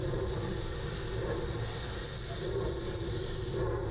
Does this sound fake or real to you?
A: real